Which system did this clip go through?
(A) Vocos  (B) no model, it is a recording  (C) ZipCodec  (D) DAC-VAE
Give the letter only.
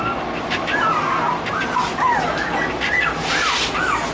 B